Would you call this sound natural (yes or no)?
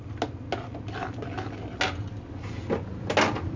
yes